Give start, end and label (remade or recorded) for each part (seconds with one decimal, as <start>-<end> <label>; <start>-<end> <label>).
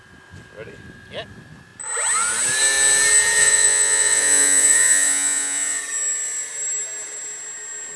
0.0-3.4 recorded; 3.4-5.8 remade; 5.8-8.0 recorded